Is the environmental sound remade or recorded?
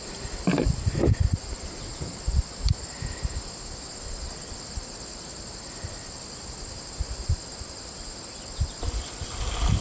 recorded